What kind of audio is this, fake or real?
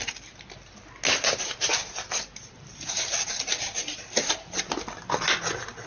real